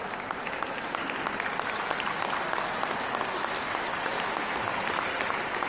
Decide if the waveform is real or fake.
real